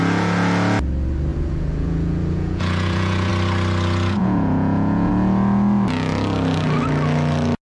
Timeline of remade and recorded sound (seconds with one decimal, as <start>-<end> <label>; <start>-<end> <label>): 0.0-1.3 recorded; 1.3-3.3 remade; 3.3-4.2 recorded; 4.2-5.1 remade; 5.1-7.6 recorded